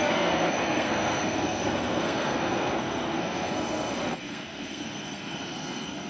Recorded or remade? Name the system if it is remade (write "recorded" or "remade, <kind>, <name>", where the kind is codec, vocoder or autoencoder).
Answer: remade, codec, SNAC